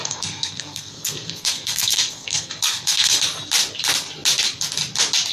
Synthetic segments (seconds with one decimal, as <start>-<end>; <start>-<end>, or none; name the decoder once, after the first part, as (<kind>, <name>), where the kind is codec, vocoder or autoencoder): 0.0-3.2 (codec, SNAC)